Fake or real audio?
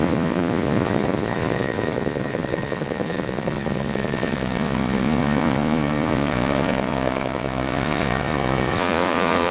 fake